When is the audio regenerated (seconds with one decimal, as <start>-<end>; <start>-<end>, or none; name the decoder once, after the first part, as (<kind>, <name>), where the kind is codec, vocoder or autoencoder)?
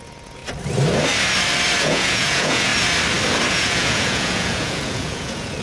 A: 0.0-0.4 (vocoder, Vocos); 1.8-2.7; 3.5-5.6